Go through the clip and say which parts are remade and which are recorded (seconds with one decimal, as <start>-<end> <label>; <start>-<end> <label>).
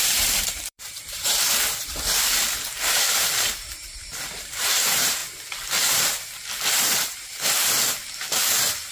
0.0-5.2 remade; 5.2-6.7 recorded; 6.7-7.6 remade; 7.6-8.4 recorded; 8.4-8.9 remade